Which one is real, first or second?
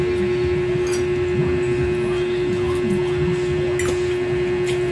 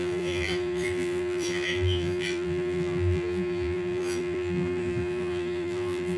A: first